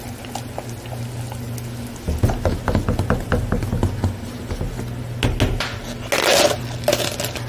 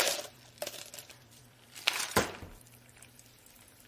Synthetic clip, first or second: second